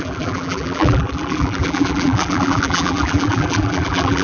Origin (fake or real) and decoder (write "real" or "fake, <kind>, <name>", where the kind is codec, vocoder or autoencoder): fake, vocoder, BigVGAN v2